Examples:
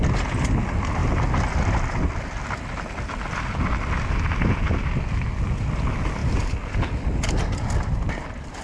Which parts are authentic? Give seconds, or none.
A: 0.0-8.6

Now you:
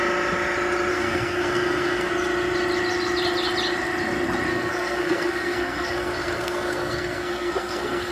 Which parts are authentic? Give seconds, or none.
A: 0.0-0.9; 2.1-4.5

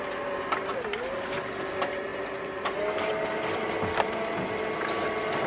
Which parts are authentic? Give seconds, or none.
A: 0.0-5.5